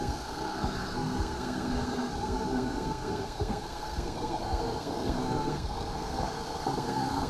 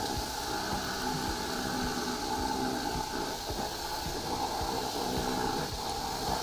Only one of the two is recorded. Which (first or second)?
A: second